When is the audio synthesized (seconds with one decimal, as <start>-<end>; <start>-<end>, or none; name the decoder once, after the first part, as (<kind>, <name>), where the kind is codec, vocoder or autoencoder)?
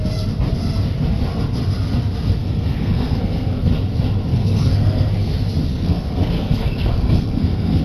2.4-3.7 (codec, SNAC); 4.3-5.3; 5.7-7.8